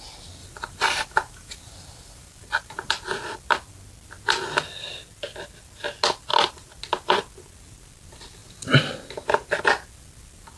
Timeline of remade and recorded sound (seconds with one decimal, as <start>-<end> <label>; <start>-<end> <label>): 0.0-0.4 recorded; 0.4-2.9 remade; 2.9-10.6 recorded